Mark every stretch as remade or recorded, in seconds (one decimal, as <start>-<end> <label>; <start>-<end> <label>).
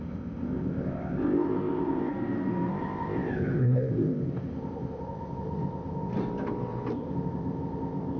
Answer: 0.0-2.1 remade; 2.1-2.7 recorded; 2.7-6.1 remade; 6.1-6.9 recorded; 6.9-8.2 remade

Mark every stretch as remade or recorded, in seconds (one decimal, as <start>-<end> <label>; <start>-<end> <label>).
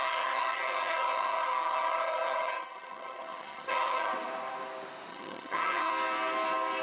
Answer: 0.0-4.1 remade; 4.1-5.1 recorded; 5.1-5.9 remade; 5.9-6.8 recorded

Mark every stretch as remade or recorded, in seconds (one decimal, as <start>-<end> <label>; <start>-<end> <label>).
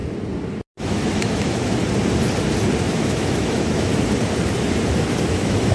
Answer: 0.0-0.8 recorded; 0.8-1.8 remade; 1.8-2.9 recorded; 2.9-3.9 remade; 3.9-5.3 recorded; 5.3-5.7 remade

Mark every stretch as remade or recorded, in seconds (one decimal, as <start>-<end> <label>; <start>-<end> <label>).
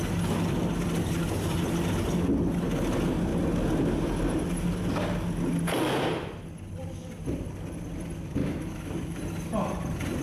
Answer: 0.0-8.4 recorded; 8.4-9.2 remade; 9.2-10.2 recorded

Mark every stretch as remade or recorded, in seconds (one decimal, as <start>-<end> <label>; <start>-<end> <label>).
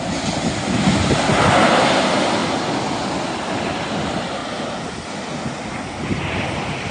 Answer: 0.0-6.9 recorded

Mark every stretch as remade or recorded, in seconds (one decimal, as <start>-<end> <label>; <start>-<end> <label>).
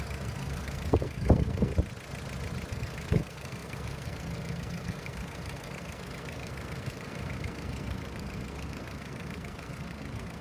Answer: 0.0-1.7 remade; 1.7-2.7 recorded; 2.7-10.4 remade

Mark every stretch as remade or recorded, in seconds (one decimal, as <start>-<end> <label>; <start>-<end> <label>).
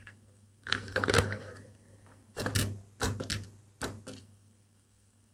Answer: 0.0-2.5 remade; 2.5-4.2 recorded; 4.2-5.3 remade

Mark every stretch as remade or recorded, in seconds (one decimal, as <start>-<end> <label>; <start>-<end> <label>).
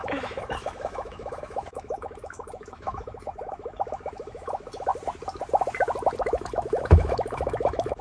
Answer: 0.0-4.9 remade; 4.9-6.2 recorded; 6.2-8.0 remade